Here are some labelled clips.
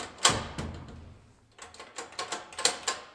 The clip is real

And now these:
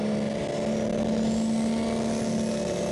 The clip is real